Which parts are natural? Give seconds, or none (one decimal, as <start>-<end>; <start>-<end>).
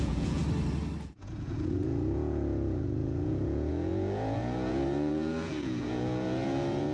0.4-1.0